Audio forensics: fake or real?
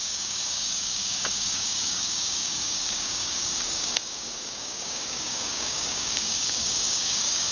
fake